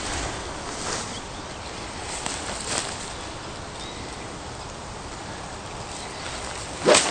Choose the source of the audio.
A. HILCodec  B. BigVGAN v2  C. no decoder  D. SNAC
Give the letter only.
C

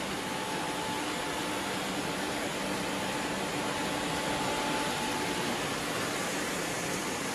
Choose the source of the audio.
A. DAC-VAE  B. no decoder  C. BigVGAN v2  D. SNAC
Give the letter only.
B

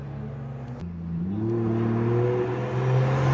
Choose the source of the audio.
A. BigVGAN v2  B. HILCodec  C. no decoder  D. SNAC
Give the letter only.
C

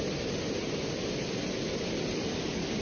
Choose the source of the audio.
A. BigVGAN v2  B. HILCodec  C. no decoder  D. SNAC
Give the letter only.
C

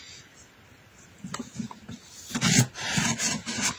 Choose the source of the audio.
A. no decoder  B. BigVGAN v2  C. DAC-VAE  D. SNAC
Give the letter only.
A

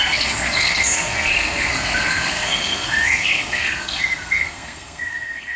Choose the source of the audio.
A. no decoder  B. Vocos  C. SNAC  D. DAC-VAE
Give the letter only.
C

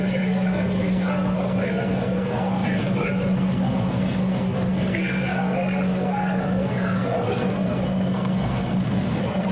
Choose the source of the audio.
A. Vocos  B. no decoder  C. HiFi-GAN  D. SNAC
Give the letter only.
D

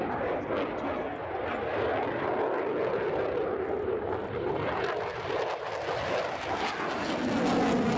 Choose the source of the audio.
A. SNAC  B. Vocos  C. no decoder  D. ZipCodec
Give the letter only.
C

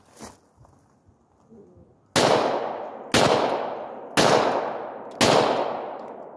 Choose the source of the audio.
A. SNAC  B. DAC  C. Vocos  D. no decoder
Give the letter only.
D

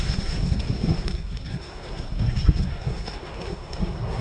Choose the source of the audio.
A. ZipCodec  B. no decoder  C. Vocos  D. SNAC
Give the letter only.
D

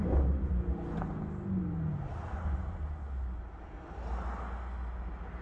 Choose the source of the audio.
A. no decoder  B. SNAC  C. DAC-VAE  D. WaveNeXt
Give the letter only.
A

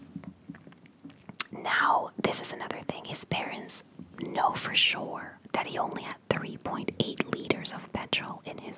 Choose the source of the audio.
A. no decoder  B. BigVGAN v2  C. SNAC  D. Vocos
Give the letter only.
A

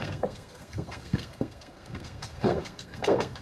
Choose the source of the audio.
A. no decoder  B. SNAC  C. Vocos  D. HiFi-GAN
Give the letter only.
B